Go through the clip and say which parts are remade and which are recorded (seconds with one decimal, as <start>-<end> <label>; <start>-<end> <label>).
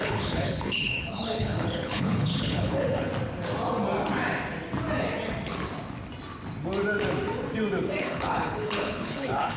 0.0-3.1 remade; 3.1-8.0 recorded; 8.0-9.6 remade